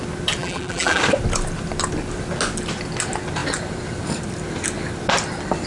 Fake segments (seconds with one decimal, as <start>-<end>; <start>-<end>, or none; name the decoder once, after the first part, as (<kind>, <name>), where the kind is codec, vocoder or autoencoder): 0.4-1.0 (vocoder, BigVGAN v2)